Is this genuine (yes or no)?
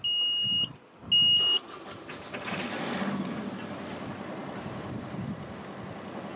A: yes